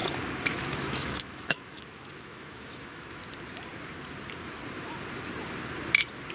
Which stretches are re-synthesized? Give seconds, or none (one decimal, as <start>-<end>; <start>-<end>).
0.5-3.2